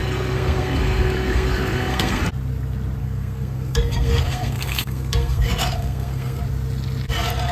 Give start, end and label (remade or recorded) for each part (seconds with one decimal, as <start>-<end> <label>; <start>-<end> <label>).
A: 0.0-2.2 remade; 2.2-3.0 recorded; 3.0-6.4 remade; 6.4-7.5 recorded